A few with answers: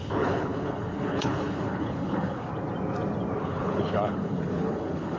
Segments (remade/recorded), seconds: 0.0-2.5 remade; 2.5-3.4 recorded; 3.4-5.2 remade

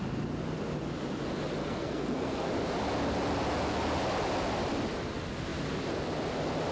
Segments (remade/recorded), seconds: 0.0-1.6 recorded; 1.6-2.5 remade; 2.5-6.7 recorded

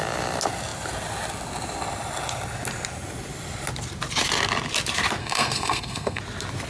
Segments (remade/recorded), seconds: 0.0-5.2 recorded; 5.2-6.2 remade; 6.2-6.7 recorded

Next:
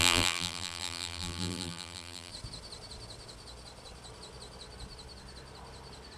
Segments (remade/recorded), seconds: 0.0-2.3 remade; 2.3-6.2 recorded

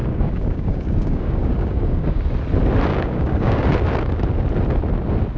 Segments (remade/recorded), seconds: 0.0-2.2 remade; 2.2-2.9 recorded; 2.9-3.6 remade; 3.6-5.4 recorded